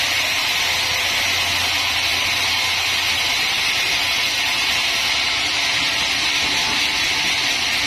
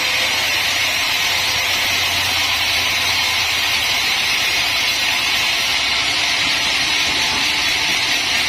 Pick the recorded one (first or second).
first